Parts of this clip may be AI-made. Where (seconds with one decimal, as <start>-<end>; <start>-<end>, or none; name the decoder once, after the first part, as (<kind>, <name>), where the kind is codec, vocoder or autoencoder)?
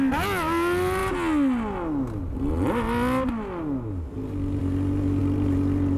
none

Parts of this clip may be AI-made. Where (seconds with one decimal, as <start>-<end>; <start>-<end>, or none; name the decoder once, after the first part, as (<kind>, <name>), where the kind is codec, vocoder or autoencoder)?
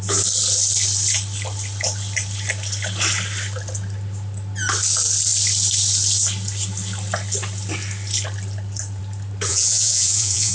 9.5-10.5 (vocoder, Vocos)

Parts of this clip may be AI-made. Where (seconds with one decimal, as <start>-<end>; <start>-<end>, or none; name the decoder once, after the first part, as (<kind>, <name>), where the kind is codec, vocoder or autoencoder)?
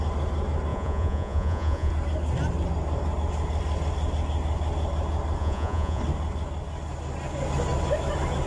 0.7-1.9 (vocoder, Vocos); 5.4-6.0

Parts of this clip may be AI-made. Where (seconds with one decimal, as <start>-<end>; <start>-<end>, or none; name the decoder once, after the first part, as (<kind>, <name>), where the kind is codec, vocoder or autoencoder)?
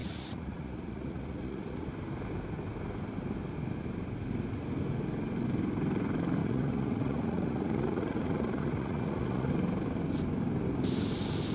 0.0-1.9 (vocoder, Vocos); 6.4-9.5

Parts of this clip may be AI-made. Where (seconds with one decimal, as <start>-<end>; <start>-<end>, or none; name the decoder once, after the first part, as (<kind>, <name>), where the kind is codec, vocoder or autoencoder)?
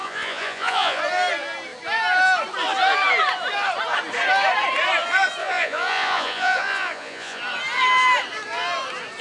0.0-1.0 (vocoder, Vocos); 5.4-7.4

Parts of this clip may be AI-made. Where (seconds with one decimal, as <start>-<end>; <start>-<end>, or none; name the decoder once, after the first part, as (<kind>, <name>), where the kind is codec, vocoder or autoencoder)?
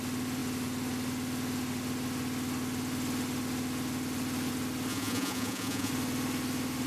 4.9-5.9 (vocoder, Vocos)